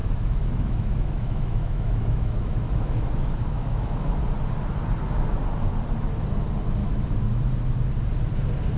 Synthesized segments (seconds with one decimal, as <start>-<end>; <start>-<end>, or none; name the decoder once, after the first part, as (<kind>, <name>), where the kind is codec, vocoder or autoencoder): 0.0-4.2 (autoencoder, DAC-VAE); 6.8-7.4